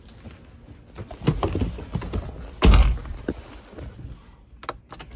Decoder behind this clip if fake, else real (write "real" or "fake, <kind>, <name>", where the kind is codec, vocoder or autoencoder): real